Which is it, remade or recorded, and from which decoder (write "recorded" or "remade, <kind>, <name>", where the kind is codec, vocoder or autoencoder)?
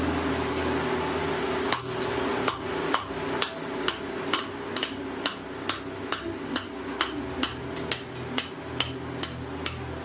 recorded